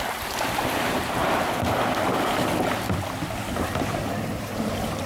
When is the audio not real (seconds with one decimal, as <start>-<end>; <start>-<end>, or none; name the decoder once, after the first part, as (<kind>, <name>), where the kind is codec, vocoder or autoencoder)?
0.0-1.2 (vocoder, BigVGAN v2); 3.5-5.1